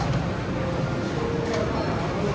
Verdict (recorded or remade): recorded